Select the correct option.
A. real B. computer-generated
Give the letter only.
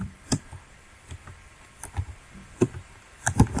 B